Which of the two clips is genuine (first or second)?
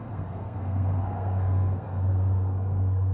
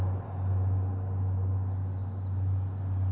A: second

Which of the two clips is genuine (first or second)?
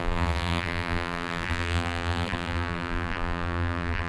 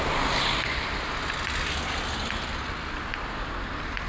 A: second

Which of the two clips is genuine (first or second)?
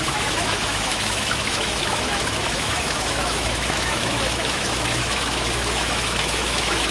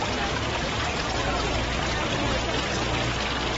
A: second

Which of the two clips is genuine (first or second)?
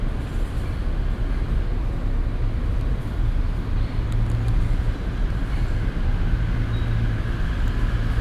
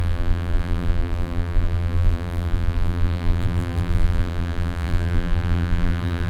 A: first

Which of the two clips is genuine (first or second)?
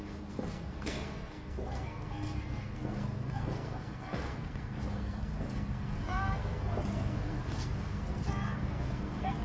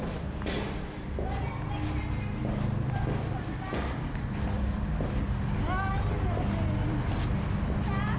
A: second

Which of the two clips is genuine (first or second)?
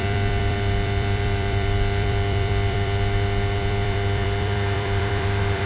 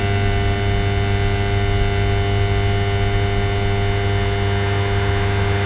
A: second